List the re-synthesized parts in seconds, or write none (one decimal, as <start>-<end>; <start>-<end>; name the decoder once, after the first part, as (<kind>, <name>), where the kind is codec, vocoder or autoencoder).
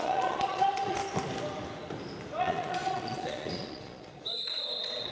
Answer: 0.0-1.0 (vocoder, Vocos); 2.4-5.1